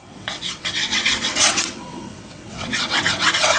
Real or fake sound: fake